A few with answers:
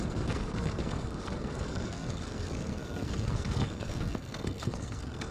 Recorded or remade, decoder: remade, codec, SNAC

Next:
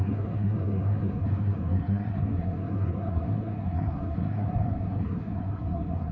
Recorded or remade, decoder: remade, codec, SNAC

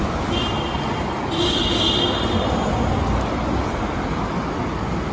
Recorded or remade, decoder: recorded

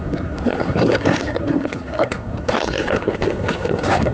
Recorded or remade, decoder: remade, codec, SNAC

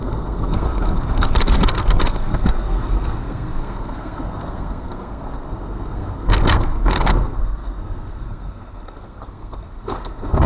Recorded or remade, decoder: remade, codec, SNAC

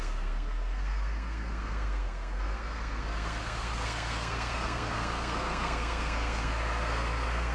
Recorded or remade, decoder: remade, codec, SNAC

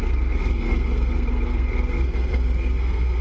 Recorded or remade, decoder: remade, codec, SNAC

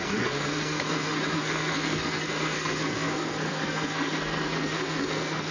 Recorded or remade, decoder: remade, codec, SNAC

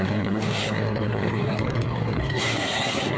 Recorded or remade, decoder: remade, codec, SNAC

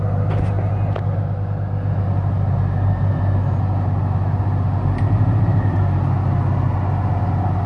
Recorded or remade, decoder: recorded